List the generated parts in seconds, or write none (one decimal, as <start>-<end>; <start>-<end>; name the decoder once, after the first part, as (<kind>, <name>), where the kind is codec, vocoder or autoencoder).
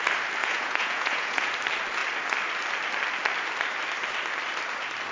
0.4-1.5 (vocoder, Vocos)